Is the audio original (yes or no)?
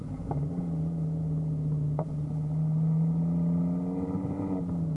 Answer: yes